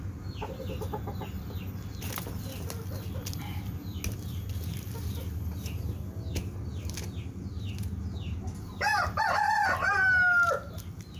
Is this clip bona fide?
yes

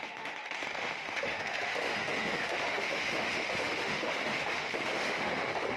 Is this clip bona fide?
no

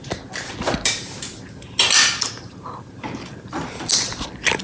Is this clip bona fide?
yes